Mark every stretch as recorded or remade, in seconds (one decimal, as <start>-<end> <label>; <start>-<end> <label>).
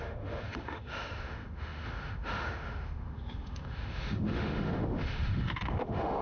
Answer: 0.0-6.2 remade